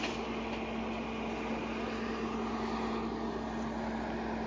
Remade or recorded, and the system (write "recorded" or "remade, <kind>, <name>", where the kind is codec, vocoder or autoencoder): recorded